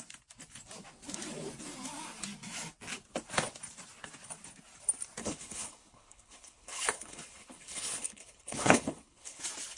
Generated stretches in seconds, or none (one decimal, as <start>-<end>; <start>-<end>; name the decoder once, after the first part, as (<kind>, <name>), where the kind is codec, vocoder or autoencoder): 5.2-9.4 (codec, HILCodec)